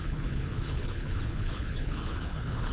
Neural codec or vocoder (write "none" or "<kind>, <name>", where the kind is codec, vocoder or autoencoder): codec, HILCodec